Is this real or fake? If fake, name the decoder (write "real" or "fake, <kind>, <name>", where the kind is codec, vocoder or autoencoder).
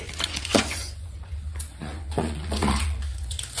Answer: fake, vocoder, Vocos